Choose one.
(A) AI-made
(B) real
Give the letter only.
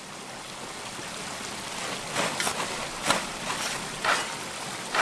B